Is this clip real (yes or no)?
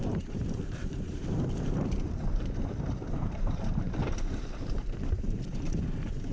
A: no